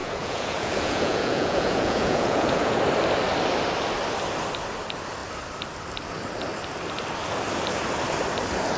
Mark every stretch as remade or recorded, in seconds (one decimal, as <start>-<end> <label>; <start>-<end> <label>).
0.0-2.8 remade; 2.8-8.8 recorded